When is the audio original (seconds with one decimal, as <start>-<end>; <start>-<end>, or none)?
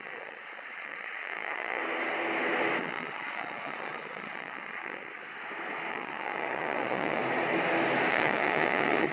1.8-2.8; 5.2-5.9; 7.2-8.1